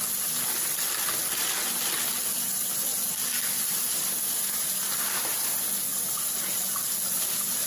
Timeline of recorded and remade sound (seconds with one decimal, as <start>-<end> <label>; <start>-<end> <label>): 0.0-7.7 recorded